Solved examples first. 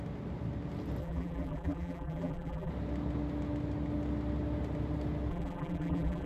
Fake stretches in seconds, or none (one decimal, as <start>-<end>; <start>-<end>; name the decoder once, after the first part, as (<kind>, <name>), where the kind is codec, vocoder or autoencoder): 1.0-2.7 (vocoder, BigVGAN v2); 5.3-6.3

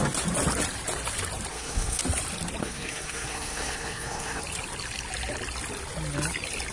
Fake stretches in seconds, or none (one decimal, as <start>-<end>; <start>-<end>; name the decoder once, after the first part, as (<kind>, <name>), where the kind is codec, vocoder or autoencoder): 1.5-2.0 (codec, SNAC); 2.6-4.4

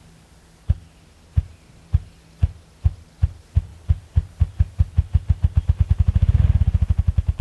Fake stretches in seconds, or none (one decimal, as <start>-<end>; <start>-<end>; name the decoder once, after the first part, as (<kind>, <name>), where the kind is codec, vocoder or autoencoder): none